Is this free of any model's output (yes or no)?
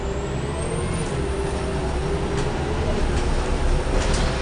yes